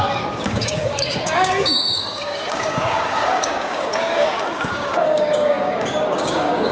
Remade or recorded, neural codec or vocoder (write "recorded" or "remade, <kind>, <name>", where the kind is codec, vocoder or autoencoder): remade, codec, DAC